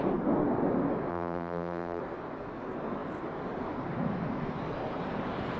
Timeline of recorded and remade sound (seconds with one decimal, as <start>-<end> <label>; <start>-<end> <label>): 0.0-1.1 recorded; 1.1-2.0 remade; 2.0-5.6 recorded